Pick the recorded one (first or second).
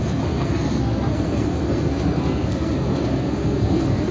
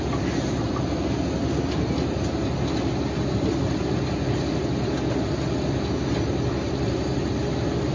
second